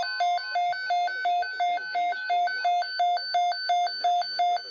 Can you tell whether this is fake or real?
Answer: real